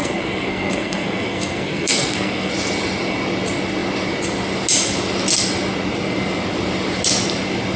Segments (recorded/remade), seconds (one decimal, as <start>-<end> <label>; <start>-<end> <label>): 0.0-2.5 remade; 2.5-7.8 recorded